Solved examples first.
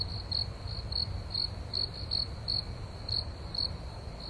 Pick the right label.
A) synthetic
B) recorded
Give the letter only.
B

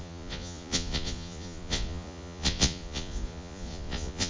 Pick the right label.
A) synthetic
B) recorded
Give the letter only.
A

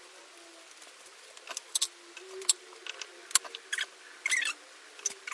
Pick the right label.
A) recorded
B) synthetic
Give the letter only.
A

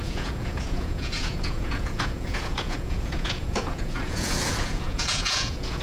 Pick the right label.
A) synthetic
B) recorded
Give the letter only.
A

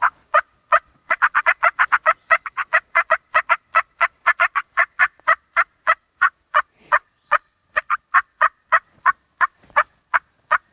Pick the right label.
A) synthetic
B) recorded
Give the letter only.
A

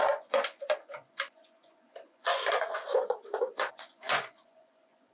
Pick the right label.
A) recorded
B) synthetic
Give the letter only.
B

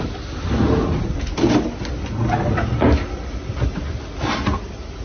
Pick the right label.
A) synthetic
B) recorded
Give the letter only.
B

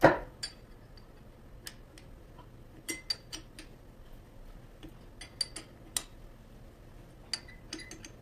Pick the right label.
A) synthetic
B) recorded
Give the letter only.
B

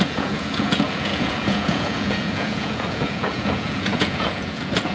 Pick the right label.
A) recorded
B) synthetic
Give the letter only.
B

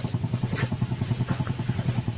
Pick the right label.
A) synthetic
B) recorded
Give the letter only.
A